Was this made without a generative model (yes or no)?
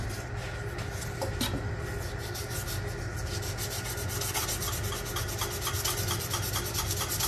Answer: yes